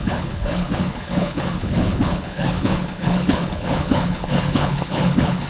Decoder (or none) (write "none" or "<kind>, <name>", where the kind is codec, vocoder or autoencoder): codec, HILCodec